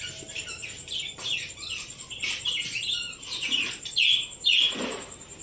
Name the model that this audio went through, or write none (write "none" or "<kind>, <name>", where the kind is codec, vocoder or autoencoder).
none